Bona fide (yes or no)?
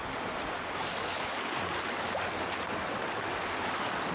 yes